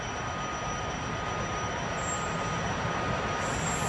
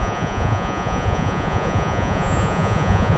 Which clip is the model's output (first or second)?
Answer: second